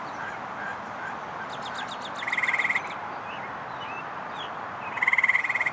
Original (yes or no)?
yes